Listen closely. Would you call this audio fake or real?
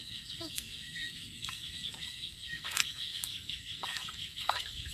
fake